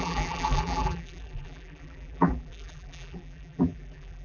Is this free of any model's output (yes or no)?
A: no